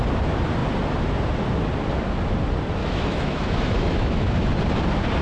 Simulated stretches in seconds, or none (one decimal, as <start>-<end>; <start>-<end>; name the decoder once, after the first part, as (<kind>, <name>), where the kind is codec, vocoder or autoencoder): 2.8-4.5 (autoencoder, DAC-VAE)